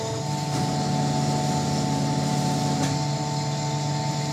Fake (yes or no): no